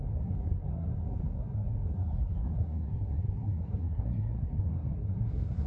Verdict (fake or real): fake